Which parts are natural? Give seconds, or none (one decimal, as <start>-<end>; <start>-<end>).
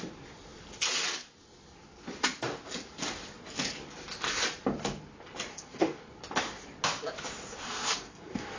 0.0-5.5; 6.1-7.6